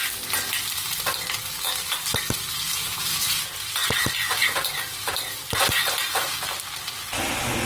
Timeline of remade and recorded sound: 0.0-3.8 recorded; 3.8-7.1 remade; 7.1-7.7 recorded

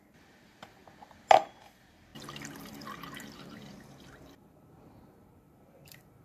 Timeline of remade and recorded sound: 0.0-0.8 remade; 0.8-1.4 recorded; 1.4-6.2 remade

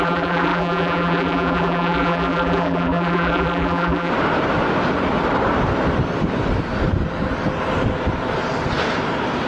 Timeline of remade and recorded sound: 0.0-4.1 remade; 4.1-9.5 recorded

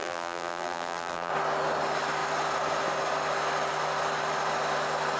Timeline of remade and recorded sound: 0.0-1.3 remade; 1.3-5.2 recorded

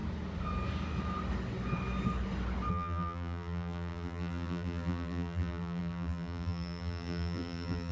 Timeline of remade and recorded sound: 0.0-2.7 recorded; 2.7-7.9 remade